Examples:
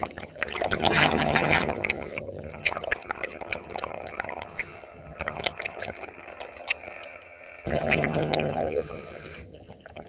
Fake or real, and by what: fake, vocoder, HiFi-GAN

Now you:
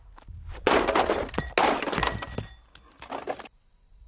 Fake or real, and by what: real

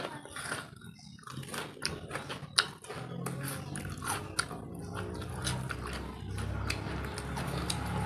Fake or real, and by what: real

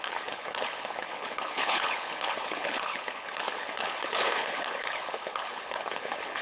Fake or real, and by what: fake, codec, HILCodec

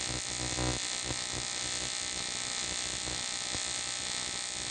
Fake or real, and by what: real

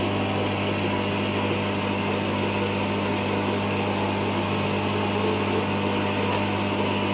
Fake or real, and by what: real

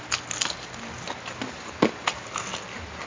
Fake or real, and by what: real